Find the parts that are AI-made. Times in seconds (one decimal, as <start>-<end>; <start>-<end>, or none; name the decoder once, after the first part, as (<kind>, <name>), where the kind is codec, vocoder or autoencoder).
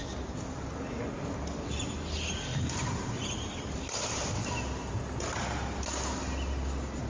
none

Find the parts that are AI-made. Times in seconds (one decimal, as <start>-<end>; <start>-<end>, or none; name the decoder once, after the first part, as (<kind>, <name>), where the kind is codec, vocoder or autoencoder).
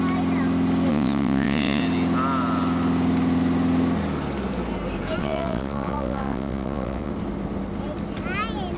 0.9-1.8 (vocoder, WaveNeXt); 5.2-7.1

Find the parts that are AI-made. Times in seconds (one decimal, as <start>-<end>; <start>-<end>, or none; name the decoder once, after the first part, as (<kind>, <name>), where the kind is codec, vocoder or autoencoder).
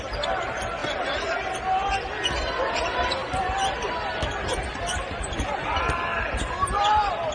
none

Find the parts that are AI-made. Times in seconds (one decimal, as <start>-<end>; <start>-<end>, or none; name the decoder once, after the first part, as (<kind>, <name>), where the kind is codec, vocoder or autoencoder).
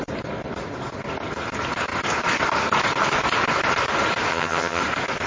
4.3-4.8 (vocoder, HiFi-GAN)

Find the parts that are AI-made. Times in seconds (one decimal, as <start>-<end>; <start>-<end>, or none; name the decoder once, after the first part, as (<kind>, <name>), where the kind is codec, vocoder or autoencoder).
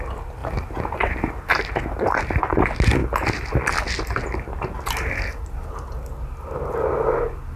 none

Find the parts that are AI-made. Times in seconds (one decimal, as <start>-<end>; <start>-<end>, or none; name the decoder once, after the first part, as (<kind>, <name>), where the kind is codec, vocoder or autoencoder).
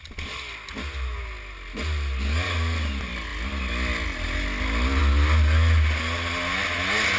none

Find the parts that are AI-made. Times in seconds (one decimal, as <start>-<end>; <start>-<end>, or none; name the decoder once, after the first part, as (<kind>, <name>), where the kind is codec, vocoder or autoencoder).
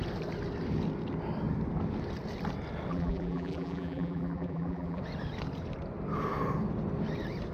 2.9-5.0 (vocoder, BigVGAN v2)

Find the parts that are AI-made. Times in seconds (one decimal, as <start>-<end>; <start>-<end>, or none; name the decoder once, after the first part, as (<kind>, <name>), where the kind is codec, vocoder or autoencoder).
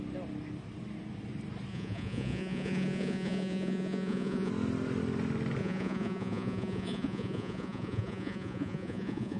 1.7-4.5 (vocoder, Vocos); 5.6-9.4